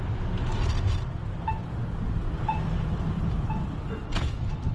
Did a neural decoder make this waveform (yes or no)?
no